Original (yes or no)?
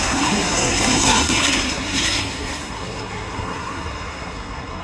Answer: no